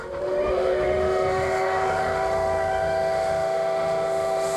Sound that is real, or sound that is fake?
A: fake